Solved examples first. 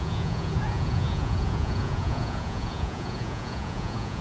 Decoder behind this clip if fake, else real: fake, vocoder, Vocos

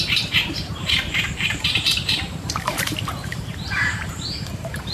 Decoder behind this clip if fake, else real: fake, vocoder, BigVGAN v2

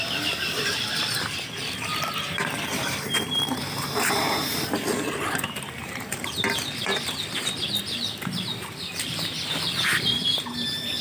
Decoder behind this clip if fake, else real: fake, vocoder, BigVGAN v2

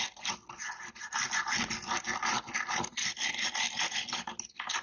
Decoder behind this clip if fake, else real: real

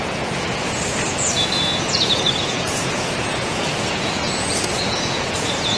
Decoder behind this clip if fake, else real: fake, vocoder, Vocos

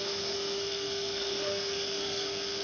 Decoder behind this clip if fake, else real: fake, codec, SNAC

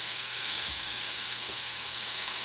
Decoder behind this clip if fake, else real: fake, codec, SNAC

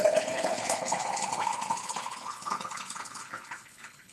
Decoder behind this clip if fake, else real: fake, codec, HILCodec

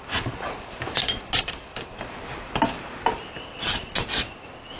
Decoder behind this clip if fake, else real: real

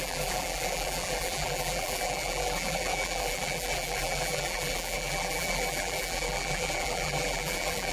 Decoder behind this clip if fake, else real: fake, vocoder, BigVGAN v2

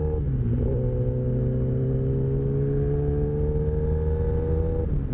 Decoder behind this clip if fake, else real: real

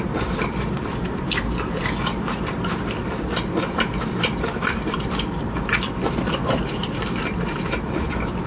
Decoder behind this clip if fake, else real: fake, vocoder, BigVGAN v2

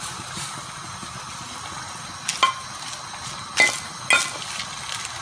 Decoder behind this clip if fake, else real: real